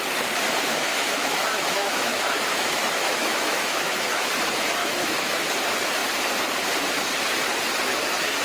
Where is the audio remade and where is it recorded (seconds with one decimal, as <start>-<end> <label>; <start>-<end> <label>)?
0.0-0.7 recorded; 0.7-4.3 remade; 4.3-4.8 recorded; 4.8-5.5 remade; 5.5-8.4 recorded